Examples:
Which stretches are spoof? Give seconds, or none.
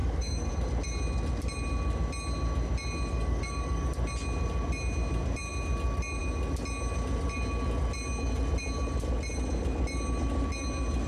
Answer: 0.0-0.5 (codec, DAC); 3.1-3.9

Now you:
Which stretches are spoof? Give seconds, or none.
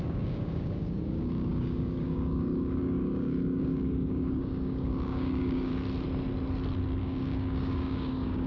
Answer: 0.0-5.7 (codec, DAC); 7.0-8.5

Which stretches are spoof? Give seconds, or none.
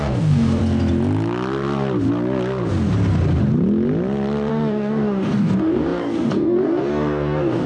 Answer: 0.0-0.6 (codec, DAC); 4.5-7.7